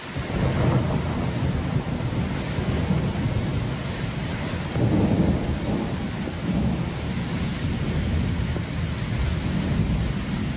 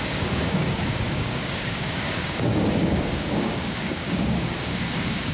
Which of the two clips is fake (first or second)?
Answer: second